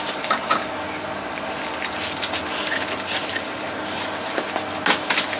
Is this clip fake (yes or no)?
no